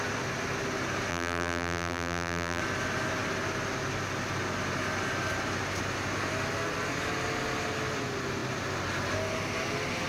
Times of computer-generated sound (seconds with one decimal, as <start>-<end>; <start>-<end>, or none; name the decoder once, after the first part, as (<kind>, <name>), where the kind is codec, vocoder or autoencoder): 1.1-2.6 (vocoder, BigVGAN v2)